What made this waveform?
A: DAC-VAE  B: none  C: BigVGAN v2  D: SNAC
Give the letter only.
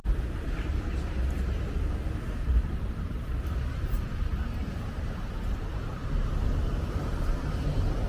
C